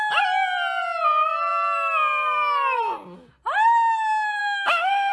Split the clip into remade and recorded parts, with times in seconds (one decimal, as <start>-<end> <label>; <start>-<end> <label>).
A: 0.0-4.4 recorded; 4.4-5.1 remade